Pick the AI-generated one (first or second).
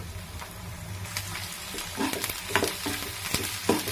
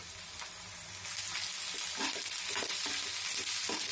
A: first